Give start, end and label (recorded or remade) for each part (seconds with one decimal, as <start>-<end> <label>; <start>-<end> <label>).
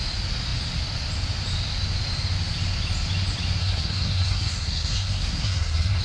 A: 0.0-3.6 recorded; 3.6-6.0 remade